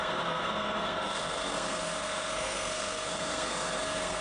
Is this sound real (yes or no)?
no